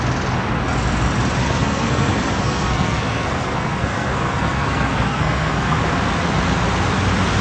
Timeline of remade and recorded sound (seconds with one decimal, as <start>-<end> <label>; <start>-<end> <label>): 0.0-1.4 recorded; 1.4-5.8 remade; 5.8-7.4 recorded